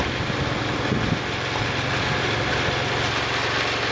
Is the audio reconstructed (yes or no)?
no